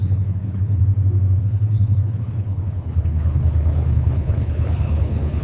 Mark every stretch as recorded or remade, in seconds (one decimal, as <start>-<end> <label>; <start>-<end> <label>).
0.0-0.8 remade; 0.8-1.4 recorded; 1.4-5.4 remade